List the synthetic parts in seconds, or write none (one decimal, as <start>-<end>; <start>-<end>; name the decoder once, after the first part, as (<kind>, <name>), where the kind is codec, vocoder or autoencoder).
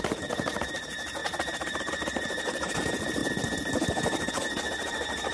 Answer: 0.0-3.2 (vocoder, BigVGAN v2); 4.3-5.3